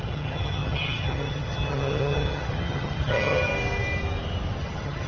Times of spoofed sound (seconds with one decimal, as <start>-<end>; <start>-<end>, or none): 0.0-3.5; 4.6-5.1